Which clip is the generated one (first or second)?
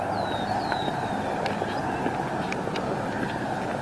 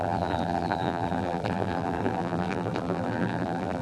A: second